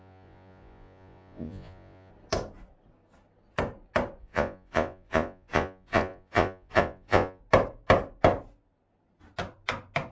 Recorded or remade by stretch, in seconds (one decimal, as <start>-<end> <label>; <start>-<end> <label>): 0.0-2.1 remade; 2.1-4.2 recorded; 4.2-7.4 remade; 7.4-10.1 recorded